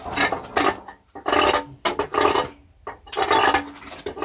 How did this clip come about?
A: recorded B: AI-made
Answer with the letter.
A